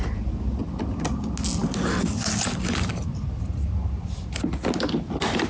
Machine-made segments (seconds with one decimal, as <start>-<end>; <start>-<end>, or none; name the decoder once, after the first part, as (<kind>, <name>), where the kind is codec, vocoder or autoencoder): none